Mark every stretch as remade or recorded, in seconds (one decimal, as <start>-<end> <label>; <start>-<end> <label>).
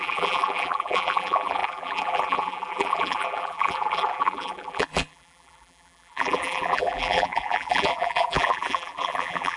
0.0-9.6 remade